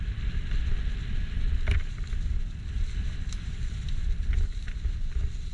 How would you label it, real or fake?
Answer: real